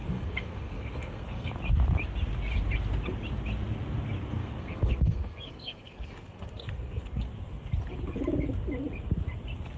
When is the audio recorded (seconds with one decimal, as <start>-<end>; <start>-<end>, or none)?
1.5-4.4; 7.2-9.8